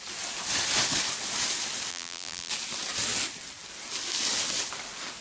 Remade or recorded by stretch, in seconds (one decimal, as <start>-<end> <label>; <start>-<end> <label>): 0.0-1.9 recorded; 1.9-2.5 remade; 2.5-5.2 recorded